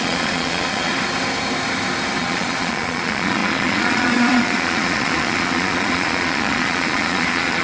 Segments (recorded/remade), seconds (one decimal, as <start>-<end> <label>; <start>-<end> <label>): 0.0-0.9 remade; 0.9-2.2 recorded; 2.2-7.6 remade